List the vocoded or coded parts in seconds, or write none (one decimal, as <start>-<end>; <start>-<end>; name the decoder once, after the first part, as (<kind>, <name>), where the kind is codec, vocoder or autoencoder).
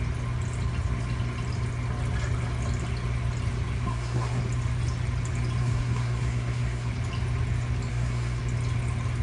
3.9-4.4 (codec, SNAC); 5.6-6.9; 7.9-8.4